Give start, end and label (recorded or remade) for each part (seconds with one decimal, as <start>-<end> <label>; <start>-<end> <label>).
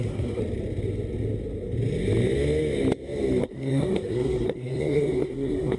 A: 0.0-0.4 remade; 0.4-3.4 recorded; 3.4-5.8 remade